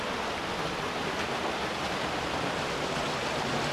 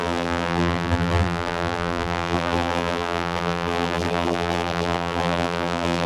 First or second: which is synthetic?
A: second